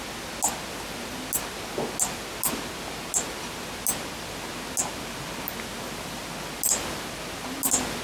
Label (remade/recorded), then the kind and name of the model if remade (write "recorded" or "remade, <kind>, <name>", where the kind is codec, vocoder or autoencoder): recorded